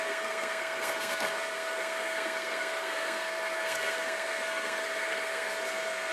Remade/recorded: remade